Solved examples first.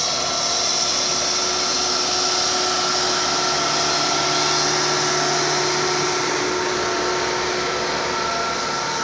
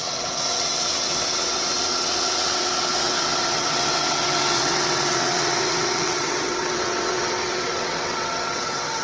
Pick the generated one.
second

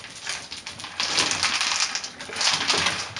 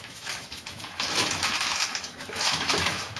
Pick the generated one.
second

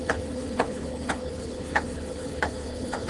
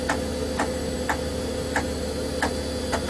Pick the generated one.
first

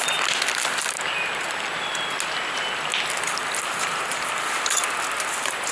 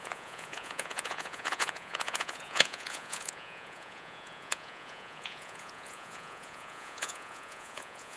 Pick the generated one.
second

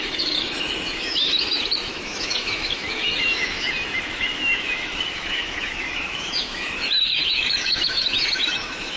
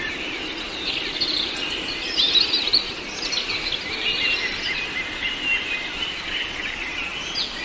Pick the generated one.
first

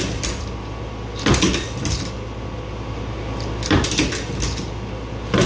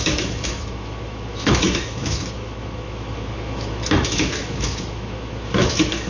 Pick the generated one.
second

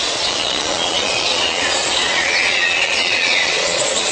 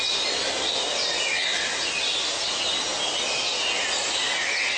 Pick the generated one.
first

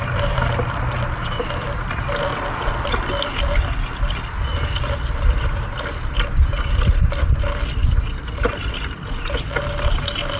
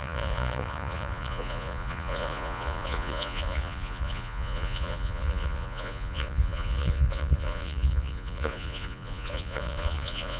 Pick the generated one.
second